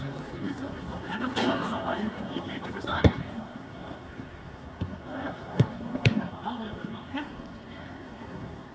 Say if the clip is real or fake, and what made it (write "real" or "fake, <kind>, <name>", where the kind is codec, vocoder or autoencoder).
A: fake, codec, SNAC